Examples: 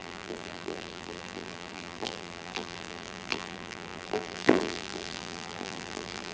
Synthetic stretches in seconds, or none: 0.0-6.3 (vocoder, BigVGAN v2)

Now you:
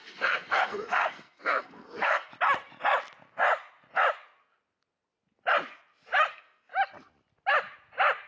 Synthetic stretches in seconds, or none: 0.0-2.3 (codec, SNAC); 6.3-6.7

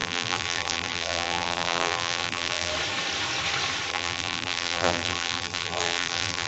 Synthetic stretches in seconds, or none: 0.0-2.7 (vocoder, BigVGAN v2); 3.9-6.5

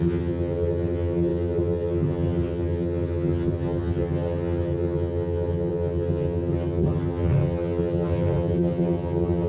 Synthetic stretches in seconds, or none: 0.0-9.5 (vocoder, HiFi-GAN)

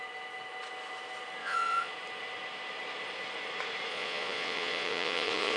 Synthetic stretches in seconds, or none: 1.4-1.9 (vocoder, Vocos); 3.9-5.6

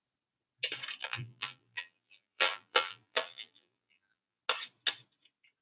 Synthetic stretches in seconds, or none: 1.0-4.4 (vocoder, BigVGAN v2)

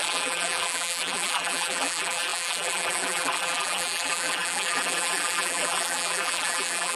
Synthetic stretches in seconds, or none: 0.0-7.0 (vocoder, BigVGAN v2)

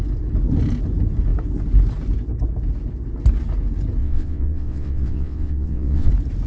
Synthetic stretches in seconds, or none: 4.0-6.1 (vocoder, WaveNeXt)